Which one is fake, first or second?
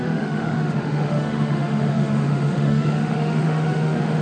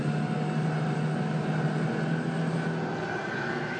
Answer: first